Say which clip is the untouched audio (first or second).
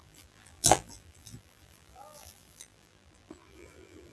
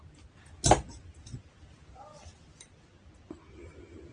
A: second